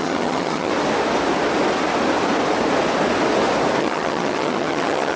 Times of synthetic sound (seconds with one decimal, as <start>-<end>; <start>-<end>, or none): 0.0-0.7; 3.8-5.2